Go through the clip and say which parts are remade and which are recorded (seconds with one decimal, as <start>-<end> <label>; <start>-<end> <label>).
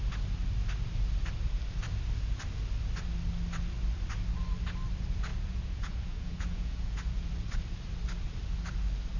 0.0-5.3 recorded; 5.3-7.3 remade; 7.3-9.2 recorded